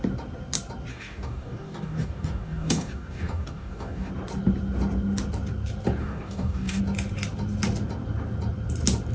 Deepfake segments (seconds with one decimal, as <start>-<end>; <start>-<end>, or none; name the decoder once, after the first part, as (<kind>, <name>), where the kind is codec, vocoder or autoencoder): 0.9-4.1 (codec, DAC); 6.0-6.8